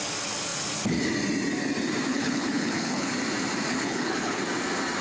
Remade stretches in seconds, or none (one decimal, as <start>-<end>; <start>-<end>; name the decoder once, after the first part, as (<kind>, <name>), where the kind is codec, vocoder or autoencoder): 2.1-3.1 (codec, HILCodec); 3.7-4.4